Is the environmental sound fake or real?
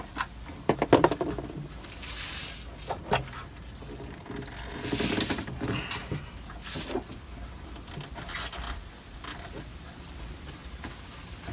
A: real